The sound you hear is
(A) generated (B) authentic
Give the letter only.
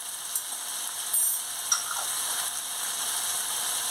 B